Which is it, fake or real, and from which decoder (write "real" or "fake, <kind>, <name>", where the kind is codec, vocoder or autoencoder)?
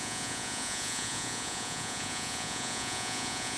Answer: fake, vocoder, Vocos